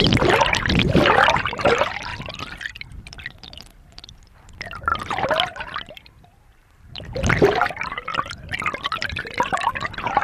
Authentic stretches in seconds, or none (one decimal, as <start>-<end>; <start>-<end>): 4.9-6.9